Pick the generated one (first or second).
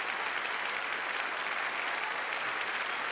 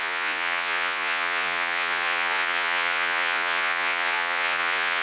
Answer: second